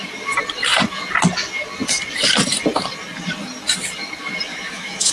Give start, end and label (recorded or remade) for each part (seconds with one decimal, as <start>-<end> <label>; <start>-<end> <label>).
0.0-4.5 recorded; 4.5-5.1 remade

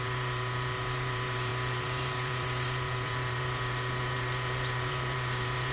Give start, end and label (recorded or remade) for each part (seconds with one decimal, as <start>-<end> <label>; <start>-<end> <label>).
0.0-5.7 remade

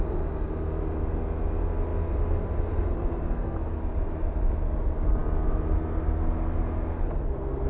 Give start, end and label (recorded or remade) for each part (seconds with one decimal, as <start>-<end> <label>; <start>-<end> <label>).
0.0-7.7 recorded

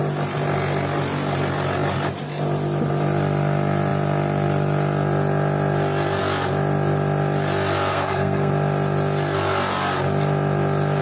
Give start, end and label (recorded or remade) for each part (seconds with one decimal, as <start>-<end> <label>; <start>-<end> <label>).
0.0-7.9 recorded; 7.9-8.5 remade; 8.5-11.0 recorded

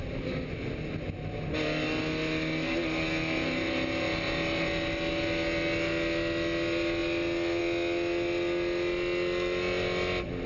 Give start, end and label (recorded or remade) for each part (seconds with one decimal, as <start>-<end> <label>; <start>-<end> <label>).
0.0-10.5 recorded

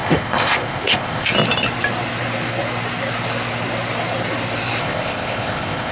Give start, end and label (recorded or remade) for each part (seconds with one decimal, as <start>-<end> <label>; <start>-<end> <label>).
0.0-1.3 remade; 1.3-4.8 recorded; 4.8-5.9 remade